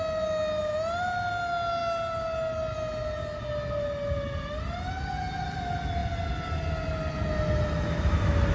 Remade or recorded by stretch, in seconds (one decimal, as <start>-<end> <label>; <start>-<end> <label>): 0.0-8.5 recorded